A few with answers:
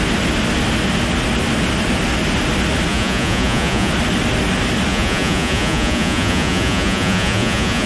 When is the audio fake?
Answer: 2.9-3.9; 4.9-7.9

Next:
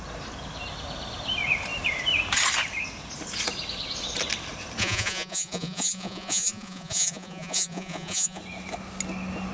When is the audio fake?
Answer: 4.8-8.4

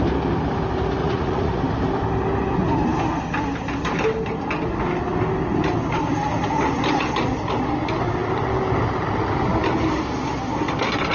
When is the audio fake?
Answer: 1.0-1.6